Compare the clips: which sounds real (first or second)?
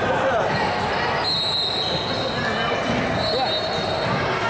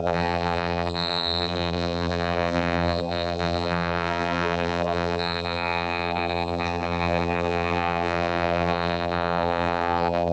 first